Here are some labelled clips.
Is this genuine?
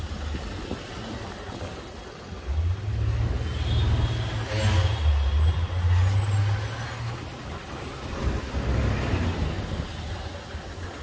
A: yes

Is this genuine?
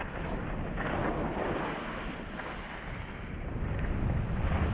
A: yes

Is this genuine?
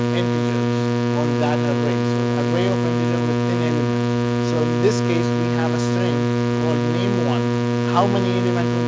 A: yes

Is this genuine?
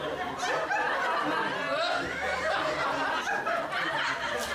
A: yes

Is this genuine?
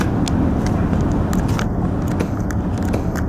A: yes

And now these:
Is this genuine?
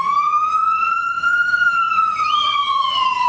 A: no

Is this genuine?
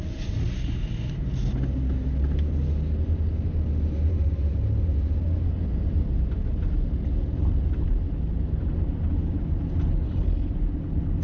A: yes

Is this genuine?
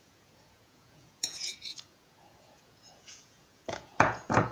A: no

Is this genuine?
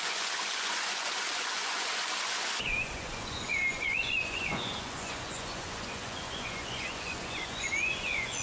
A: no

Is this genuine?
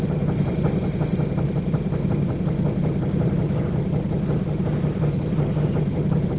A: yes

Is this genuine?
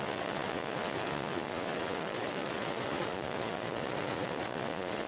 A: no